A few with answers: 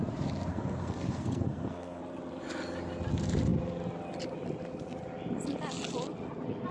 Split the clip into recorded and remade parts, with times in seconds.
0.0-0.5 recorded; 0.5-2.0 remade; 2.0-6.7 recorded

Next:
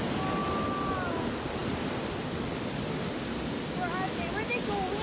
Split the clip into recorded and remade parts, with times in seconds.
0.0-5.0 recorded

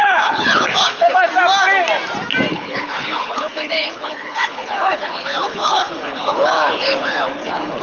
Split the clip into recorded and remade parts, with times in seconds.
0.0-1.3 remade; 1.3-2.5 recorded; 2.5-7.8 remade

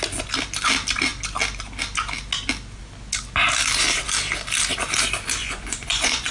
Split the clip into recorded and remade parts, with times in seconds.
0.0-5.4 recorded; 5.4-6.3 remade

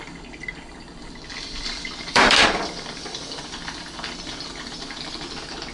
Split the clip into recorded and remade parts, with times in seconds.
0.0-1.3 recorded; 1.3-3.6 remade; 3.6-5.7 recorded